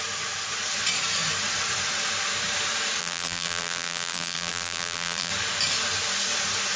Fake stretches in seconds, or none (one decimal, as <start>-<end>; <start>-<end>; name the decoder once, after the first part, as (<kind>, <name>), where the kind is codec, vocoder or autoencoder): 3.0-5.3 (vocoder, BigVGAN v2)